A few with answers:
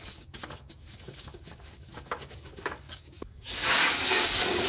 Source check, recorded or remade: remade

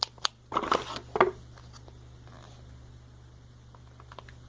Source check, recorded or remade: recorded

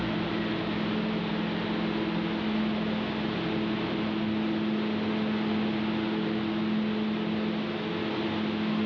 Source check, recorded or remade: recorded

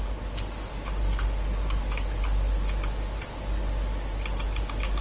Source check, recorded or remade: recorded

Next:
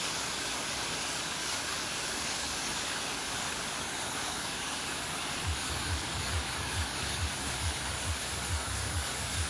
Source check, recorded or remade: remade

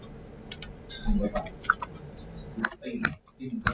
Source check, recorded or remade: recorded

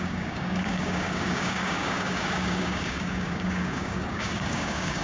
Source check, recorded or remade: remade